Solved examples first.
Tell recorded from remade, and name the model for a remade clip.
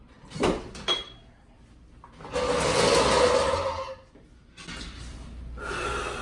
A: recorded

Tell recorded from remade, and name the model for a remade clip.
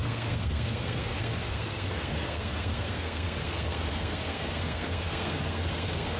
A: remade, codec, SNAC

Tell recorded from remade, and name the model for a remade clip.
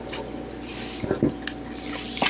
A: recorded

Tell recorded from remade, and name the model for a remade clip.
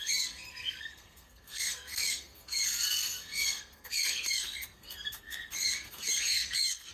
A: remade, codec, SNAC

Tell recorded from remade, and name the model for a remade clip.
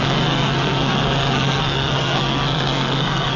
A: remade, codec, SNAC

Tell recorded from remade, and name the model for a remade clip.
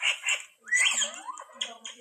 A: recorded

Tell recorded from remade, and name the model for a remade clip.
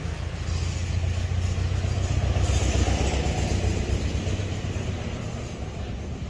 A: recorded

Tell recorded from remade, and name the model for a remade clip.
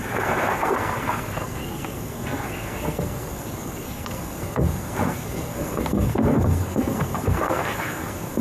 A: remade, codec, SNAC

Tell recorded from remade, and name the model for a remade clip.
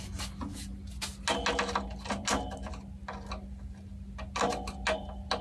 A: recorded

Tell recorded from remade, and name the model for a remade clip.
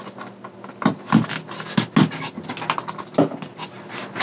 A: recorded